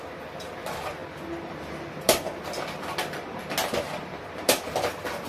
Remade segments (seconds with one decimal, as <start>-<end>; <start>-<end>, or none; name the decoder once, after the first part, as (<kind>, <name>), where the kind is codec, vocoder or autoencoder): none